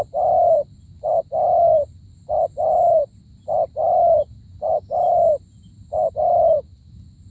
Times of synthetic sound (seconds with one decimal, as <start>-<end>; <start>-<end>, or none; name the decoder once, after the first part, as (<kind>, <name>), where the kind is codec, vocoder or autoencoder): none

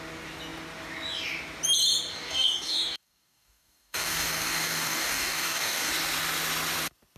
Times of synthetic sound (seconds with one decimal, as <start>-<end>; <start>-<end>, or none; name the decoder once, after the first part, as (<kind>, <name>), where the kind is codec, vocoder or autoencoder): 2.1-5.9 (codec, DAC)

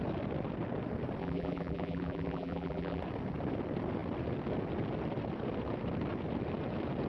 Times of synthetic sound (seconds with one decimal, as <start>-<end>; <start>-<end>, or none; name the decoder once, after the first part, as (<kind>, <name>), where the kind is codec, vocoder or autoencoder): 1.2-3.0 (vocoder, BigVGAN v2)

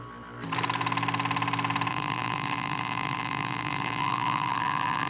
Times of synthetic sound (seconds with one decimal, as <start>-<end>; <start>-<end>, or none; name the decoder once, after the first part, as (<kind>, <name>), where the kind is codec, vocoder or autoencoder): 1.9-5.1 (vocoder, BigVGAN v2)

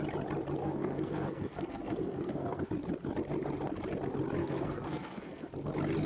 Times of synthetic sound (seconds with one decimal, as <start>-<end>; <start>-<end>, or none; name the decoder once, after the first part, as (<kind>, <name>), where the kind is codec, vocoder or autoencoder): 0.6-2.7 (codec, SNAC); 4.4-5.5